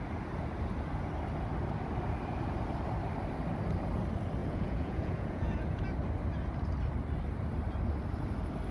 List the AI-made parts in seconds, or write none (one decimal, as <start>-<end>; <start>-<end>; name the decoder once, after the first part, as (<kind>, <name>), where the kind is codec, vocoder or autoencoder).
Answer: 4.4-5.8 (vocoder, Vocos)